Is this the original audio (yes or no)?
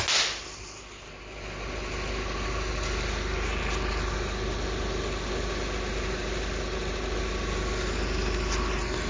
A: yes